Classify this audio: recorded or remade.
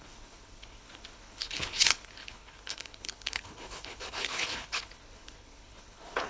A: remade